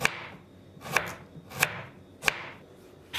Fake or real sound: real